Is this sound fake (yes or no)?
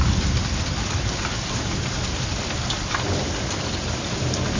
no